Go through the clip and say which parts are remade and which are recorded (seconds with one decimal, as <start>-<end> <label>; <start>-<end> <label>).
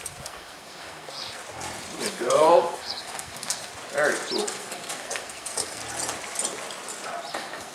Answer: 0.0-1.4 remade; 1.4-2.1 recorded; 2.1-3.7 remade; 3.7-4.4 recorded; 4.4-5.8 remade; 5.8-7.3 recorded; 7.3-7.7 remade